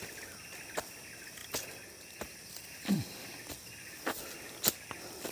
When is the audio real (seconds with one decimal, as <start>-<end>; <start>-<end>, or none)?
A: 0.0-5.3